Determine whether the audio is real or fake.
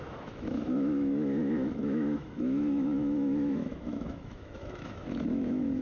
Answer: fake